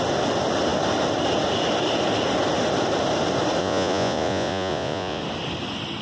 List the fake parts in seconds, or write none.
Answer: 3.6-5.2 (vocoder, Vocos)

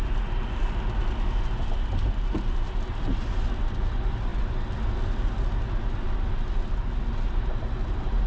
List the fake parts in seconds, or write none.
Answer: none

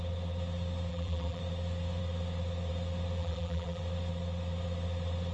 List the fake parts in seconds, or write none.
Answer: 0.9-1.4 (vocoder, BigVGAN v2); 3.2-3.8

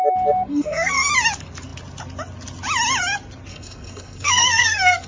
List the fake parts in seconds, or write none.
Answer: 0.5-1.1 (codec, SNAC); 3.5-5.1

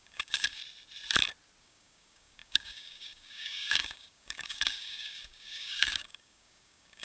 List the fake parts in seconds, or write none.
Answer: 0.0-0.6 (codec, DAC); 1.6-7.0